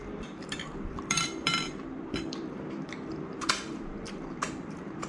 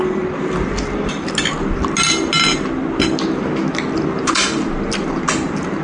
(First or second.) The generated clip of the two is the first